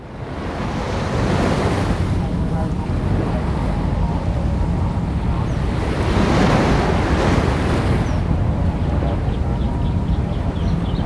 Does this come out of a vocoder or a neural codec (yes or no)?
no